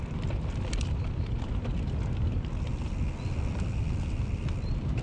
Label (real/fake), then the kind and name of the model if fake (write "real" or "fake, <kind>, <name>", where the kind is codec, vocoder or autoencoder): real